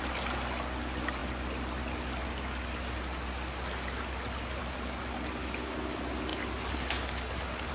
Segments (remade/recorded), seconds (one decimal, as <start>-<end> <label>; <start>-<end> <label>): 0.0-7.7 recorded